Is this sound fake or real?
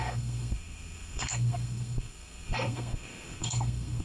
fake